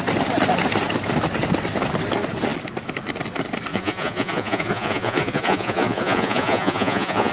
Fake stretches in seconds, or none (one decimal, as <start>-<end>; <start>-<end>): 3.7-7.3